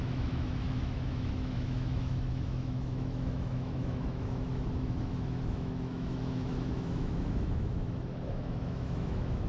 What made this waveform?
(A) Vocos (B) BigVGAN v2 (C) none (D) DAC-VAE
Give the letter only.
D